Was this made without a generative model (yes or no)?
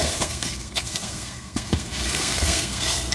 no